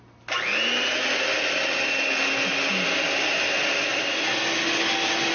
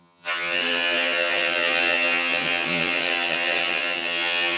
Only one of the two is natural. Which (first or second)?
first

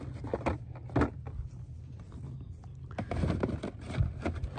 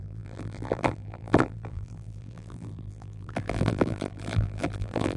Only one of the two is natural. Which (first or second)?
first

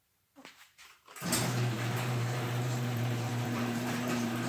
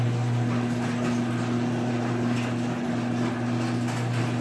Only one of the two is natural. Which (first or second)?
second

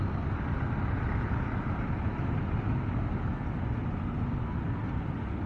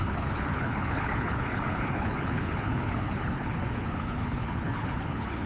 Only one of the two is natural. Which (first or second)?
first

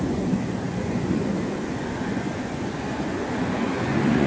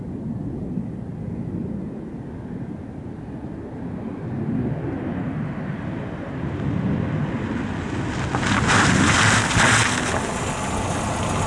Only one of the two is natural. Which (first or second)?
second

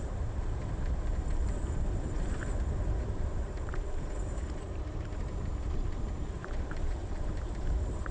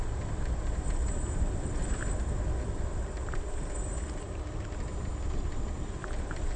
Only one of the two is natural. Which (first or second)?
second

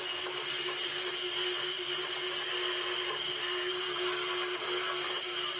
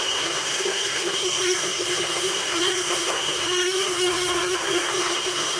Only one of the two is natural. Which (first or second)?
first